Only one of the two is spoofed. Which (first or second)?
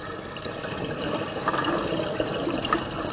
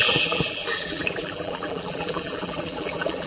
second